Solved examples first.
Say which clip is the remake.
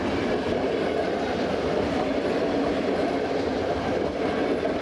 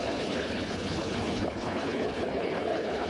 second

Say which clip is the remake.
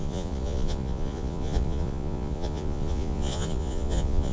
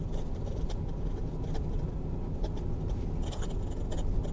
first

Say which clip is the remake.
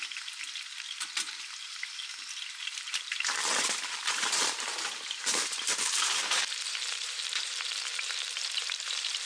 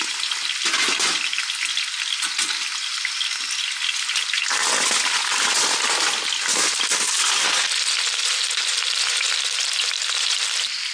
first